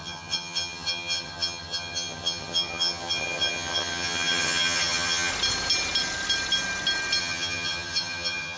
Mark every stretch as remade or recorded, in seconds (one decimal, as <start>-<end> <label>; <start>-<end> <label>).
0.0-5.3 remade; 5.3-7.2 recorded; 7.2-8.6 remade

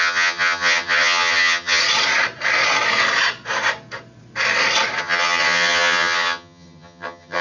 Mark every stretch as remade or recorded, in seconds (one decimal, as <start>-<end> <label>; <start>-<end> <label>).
0.0-1.8 remade; 1.8-5.0 recorded; 5.0-7.4 remade

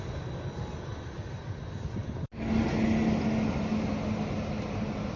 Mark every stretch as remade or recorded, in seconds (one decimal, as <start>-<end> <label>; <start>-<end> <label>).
0.0-5.2 recorded

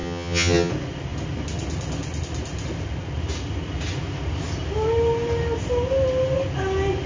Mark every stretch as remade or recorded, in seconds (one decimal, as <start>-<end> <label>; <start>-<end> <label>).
0.0-0.7 remade; 0.7-7.1 recorded

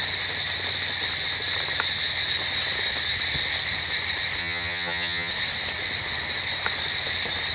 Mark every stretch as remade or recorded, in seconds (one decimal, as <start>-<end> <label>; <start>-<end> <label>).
0.0-4.4 recorded; 4.4-5.3 remade; 5.3-7.5 recorded